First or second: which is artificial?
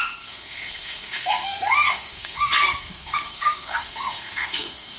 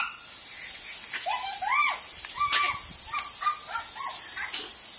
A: first